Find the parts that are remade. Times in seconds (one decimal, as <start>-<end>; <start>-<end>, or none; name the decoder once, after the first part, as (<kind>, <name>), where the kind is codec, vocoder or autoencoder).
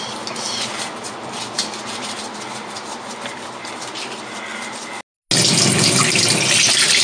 none